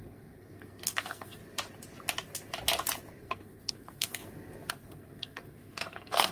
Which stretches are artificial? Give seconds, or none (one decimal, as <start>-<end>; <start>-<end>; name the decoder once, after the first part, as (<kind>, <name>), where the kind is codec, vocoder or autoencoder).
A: 0.0-1.4 (codec, SNAC); 3.2-4.2; 4.7-6.3